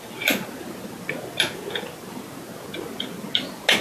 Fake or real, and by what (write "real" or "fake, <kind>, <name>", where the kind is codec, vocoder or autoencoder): real